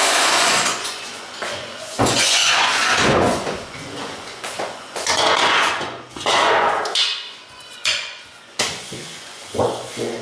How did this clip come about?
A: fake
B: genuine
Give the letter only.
A